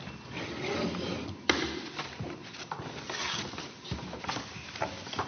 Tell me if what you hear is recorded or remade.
recorded